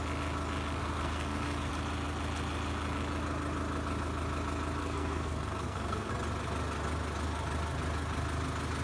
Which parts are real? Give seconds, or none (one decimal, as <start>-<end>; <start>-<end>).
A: 0.0-0.8; 1.7-4.8; 6.1-8.8